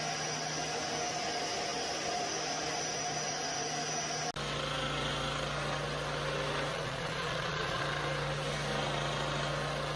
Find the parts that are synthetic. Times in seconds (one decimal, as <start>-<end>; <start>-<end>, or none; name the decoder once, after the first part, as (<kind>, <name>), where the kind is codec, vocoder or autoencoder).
6.7-7.8 (vocoder, Vocos)